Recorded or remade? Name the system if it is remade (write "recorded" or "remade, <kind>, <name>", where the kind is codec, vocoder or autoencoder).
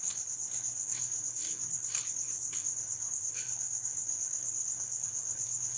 remade, codec, HILCodec